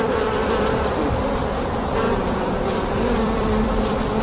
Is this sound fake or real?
fake